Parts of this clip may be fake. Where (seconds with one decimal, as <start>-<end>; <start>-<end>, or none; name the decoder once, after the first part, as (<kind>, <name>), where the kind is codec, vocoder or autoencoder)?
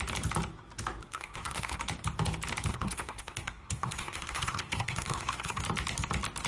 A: 1.0-1.8 (codec, SNAC); 2.7-5.6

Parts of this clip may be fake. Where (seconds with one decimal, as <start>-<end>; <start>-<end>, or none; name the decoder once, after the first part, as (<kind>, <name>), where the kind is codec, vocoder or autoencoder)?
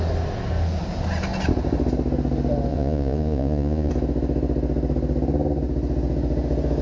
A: 2.7-3.9 (vocoder, Vocos)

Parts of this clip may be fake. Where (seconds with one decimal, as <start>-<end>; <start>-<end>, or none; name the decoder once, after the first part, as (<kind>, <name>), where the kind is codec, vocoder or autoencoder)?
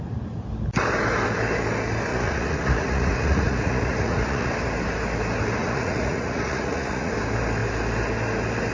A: 2.1-4.5 (vocoder, Vocos); 5.6-7.1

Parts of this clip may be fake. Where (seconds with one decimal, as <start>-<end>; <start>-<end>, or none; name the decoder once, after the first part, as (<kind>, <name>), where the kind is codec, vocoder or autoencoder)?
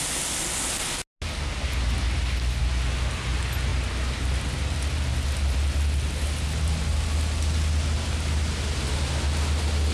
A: none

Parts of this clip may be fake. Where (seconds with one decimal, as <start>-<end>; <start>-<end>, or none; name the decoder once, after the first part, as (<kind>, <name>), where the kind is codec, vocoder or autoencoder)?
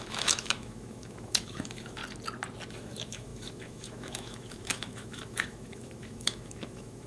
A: 0.0-2.0 (autoencoder, DAC-VAE); 2.7-7.1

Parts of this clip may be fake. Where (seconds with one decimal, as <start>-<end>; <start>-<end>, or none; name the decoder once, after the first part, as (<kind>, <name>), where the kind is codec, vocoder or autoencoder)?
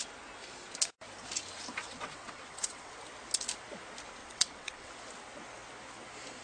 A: 1.8-2.9 (vocoder, WaveNeXt); 4.2-4.9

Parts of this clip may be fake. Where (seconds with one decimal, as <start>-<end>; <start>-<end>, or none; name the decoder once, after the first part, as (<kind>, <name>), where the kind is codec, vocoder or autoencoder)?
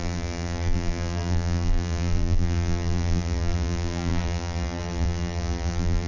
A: 0.0-6.1 (vocoder, BigVGAN v2)